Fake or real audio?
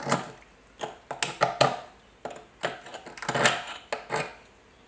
real